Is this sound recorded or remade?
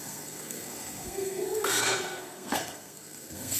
remade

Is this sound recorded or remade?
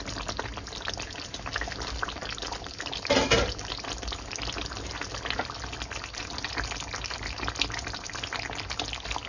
recorded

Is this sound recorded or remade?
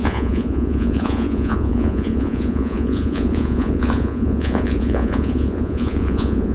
remade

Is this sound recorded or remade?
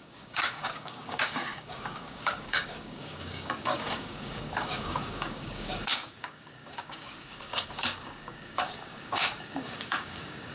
remade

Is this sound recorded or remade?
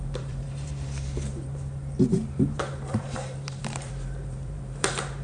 remade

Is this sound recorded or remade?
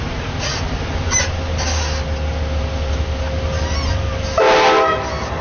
recorded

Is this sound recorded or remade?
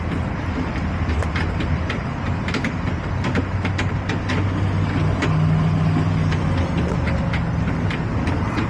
recorded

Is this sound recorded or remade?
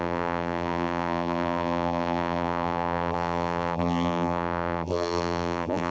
remade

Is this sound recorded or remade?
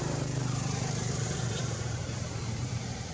remade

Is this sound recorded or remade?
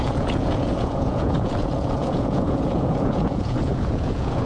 remade